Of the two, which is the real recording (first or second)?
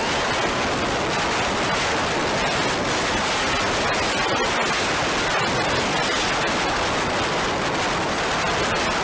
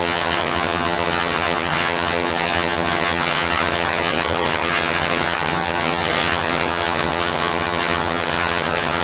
first